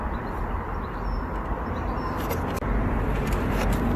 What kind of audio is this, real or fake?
real